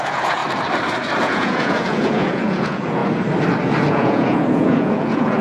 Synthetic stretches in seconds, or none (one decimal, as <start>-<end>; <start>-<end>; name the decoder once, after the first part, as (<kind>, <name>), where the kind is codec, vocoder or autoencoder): 0.0-0.4 (vocoder, Vocos); 1.2-3.0; 3.9-5.4